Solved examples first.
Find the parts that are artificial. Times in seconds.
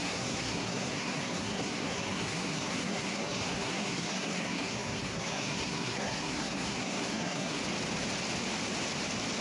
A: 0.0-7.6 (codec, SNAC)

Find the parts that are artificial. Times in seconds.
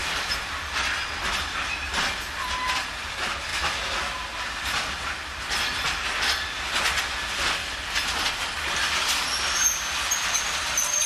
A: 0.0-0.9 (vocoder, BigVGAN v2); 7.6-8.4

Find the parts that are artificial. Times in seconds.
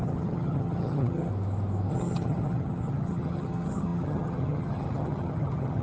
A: 0.0-1.3 (vocoder, HiFi-GAN); 1.9-5.8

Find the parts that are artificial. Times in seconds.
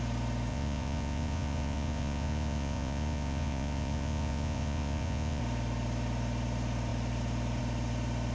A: 0.5-5.4 (vocoder, Vocos)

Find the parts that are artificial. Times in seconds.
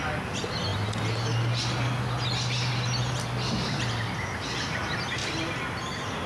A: none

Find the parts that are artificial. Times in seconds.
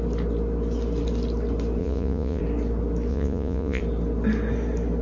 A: 1.8-2.4 (vocoder, Vocos); 3.1-3.8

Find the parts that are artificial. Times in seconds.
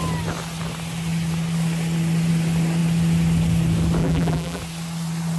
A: 4.0-4.6 (vocoder, BigVGAN v2)